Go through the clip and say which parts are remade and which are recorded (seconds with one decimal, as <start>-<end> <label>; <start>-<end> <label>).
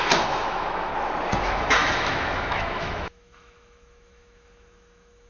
0.0-0.9 remade; 0.9-1.4 recorded; 1.4-5.3 remade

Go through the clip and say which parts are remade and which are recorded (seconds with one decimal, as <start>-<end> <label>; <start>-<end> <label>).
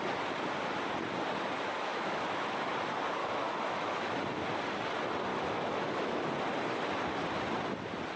0.0-1.8 recorded; 1.8-2.7 remade; 2.7-3.2 recorded; 3.2-4.2 remade; 4.2-5.3 recorded; 5.3-6.4 remade; 6.4-8.2 recorded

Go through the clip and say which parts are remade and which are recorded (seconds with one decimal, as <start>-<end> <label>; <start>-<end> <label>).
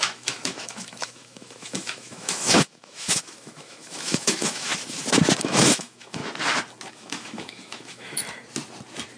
0.0-4.7 remade; 4.7-5.4 recorded; 5.4-6.2 remade; 6.2-6.9 recorded; 6.9-8.2 remade; 8.2-9.2 recorded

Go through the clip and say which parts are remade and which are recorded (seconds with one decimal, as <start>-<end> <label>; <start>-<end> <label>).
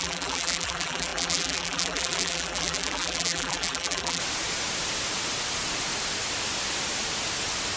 0.0-4.2 remade; 4.2-7.8 recorded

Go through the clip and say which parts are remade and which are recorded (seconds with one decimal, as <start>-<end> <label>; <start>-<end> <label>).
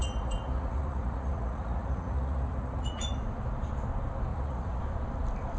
0.0-3.2 remade; 3.2-4.3 recorded; 4.3-4.8 remade; 4.8-5.6 recorded